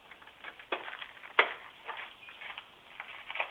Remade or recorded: recorded